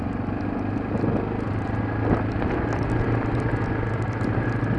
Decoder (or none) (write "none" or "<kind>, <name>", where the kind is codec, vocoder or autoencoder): none